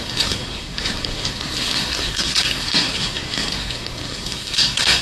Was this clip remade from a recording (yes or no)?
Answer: yes